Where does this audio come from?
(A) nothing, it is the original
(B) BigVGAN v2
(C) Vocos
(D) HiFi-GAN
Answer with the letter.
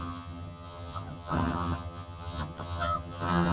D